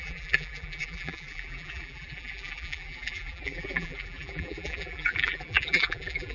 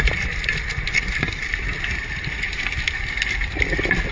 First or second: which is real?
second